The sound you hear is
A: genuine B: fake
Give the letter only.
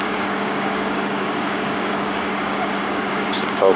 B